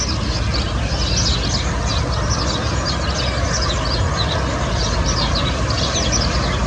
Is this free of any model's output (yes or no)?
yes